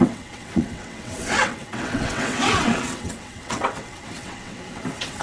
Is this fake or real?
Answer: fake